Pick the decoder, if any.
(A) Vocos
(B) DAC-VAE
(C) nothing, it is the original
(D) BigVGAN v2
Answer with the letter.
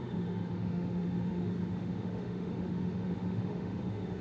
B